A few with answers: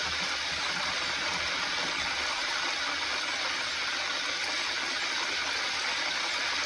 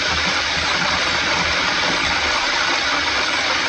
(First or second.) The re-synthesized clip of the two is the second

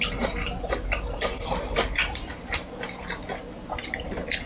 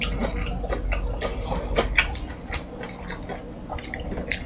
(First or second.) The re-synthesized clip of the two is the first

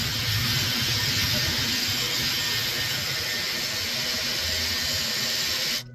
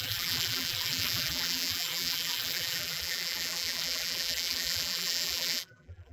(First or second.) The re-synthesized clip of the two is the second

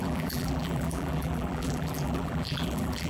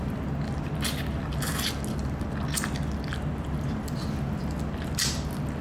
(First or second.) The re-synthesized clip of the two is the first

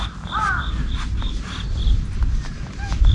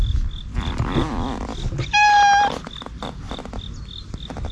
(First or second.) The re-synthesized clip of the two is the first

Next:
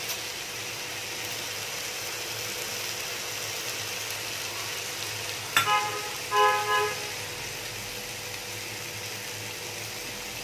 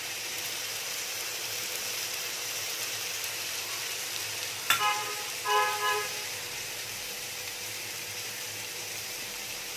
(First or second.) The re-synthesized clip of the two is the second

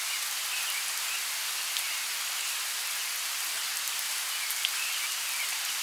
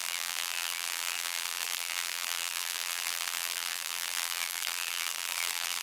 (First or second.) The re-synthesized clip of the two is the second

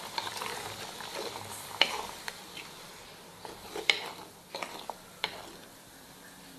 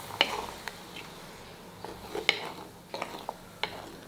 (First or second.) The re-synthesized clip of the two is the first